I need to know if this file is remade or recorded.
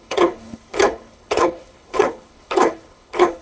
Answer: remade